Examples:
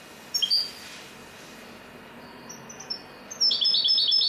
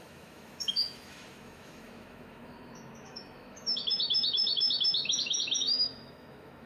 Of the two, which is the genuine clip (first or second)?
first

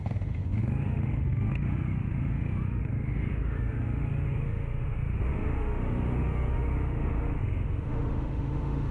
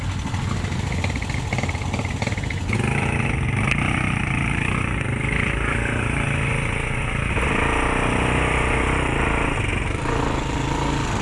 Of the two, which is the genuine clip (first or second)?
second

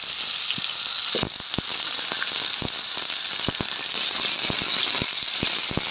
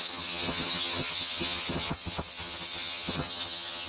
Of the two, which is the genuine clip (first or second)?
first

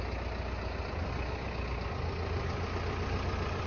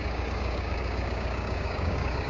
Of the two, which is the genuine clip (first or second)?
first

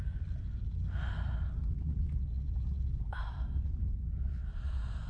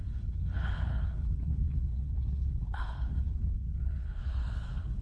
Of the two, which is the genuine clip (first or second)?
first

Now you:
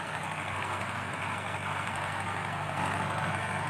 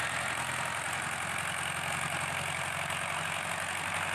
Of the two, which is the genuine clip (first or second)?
second